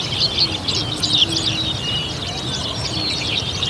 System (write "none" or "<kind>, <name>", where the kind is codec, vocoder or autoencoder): none